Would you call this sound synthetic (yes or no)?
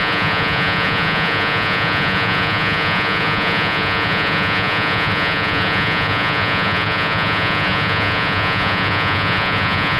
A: yes